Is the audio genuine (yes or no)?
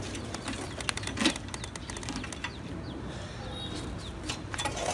yes